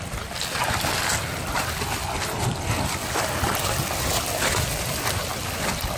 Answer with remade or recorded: recorded